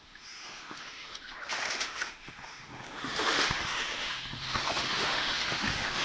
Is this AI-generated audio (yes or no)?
yes